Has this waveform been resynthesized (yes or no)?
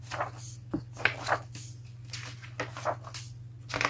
no